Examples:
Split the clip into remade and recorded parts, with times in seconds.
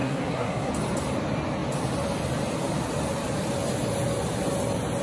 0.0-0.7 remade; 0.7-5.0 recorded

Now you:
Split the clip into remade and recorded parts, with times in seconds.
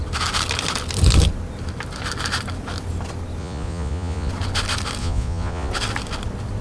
0.0-3.4 recorded; 3.4-4.3 remade; 4.3-5.0 recorded; 5.0-5.7 remade; 5.7-6.6 recorded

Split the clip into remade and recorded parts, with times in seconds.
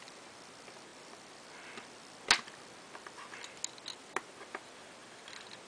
0.0-5.7 recorded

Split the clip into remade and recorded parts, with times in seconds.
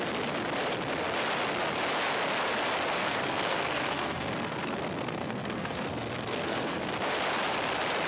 0.0-3.0 recorded; 3.0-6.8 remade; 6.8-8.1 recorded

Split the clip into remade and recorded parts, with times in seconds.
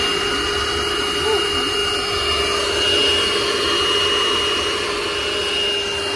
0.0-6.2 recorded